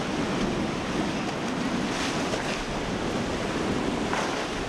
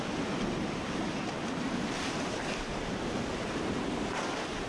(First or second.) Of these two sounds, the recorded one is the first